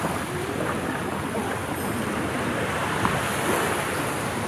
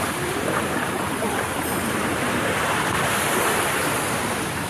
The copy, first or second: second